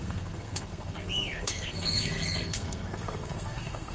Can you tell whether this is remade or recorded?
remade